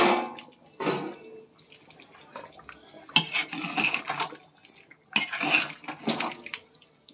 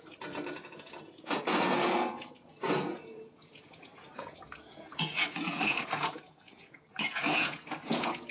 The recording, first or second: first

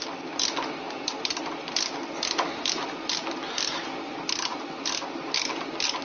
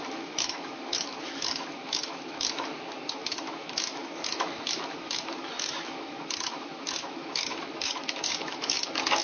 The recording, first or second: first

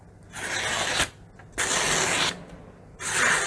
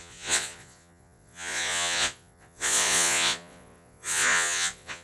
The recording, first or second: first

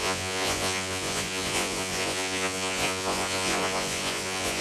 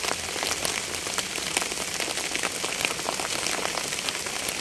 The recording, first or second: second